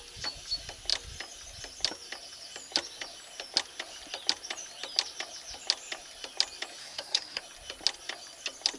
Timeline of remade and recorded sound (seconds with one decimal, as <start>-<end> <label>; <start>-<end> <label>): 0.0-6.8 recorded; 6.8-7.4 remade; 7.4-8.8 recorded